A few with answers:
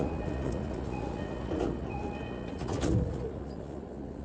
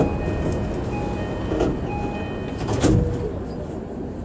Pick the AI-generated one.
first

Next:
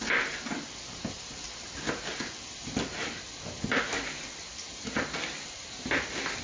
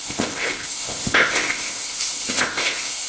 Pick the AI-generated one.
second